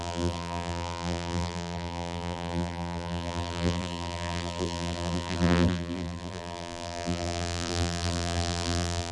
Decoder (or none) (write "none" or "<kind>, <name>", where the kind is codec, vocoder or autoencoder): vocoder, BigVGAN v2